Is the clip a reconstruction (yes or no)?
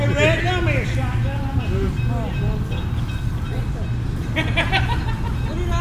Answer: no